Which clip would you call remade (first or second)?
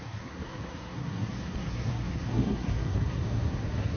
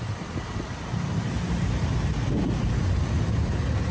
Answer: first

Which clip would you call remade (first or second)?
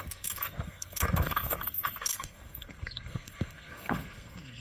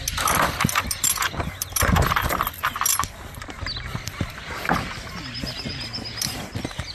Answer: first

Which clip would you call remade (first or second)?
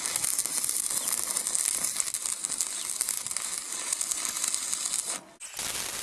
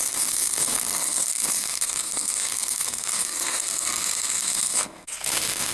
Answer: second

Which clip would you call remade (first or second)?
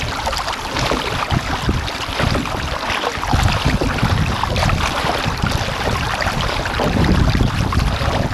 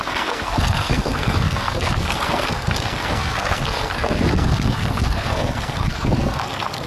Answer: second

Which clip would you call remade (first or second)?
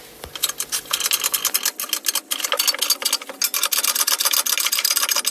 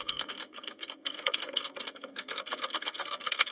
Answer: second